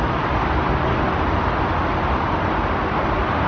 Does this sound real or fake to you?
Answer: real